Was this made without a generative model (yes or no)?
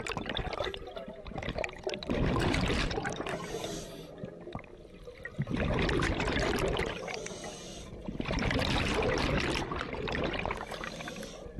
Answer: yes